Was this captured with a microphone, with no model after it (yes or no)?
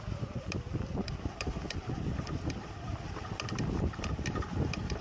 no